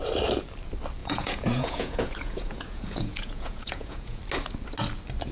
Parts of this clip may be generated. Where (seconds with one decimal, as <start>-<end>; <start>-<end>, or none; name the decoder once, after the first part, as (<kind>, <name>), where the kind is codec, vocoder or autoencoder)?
1.0-4.2 (vocoder, Vocos)